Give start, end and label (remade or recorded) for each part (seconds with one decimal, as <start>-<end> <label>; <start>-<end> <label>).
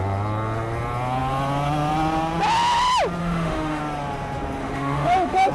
0.0-3.2 recorded; 3.2-3.8 remade; 3.8-4.6 recorded; 4.6-5.5 remade